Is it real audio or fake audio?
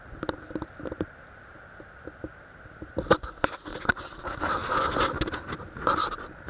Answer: real